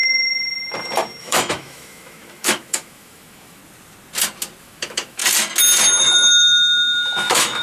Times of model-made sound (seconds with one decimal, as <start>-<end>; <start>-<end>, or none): 1.2-3.6; 4.6-5.2; 6.0-7.6